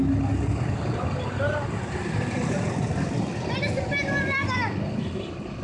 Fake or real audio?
real